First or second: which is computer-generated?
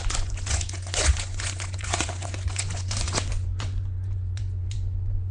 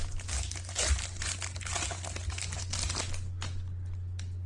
first